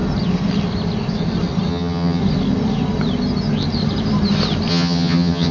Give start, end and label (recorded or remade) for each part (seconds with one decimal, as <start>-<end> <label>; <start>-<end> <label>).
0.0-1.7 recorded; 1.7-2.2 remade; 2.2-4.7 recorded; 4.7-5.5 remade